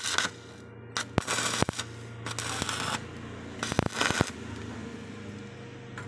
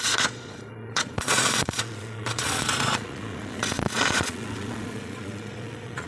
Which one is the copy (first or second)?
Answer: second